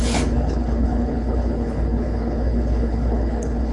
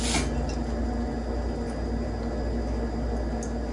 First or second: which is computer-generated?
first